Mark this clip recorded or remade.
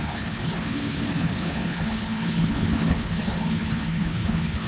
remade